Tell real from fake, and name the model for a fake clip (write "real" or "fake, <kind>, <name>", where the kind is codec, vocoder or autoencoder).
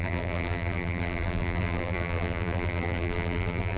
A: fake, vocoder, BigVGAN v2